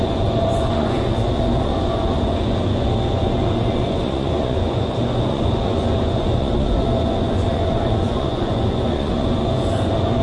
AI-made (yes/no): yes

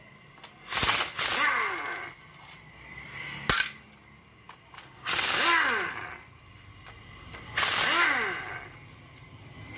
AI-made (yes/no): no